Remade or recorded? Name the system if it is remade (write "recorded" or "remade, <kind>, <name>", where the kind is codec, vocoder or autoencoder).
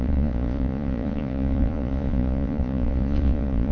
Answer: remade, vocoder, Vocos